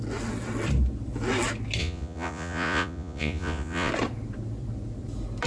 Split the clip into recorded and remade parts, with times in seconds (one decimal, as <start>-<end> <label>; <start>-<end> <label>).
0.0-1.8 recorded; 1.8-3.9 remade; 3.9-5.5 recorded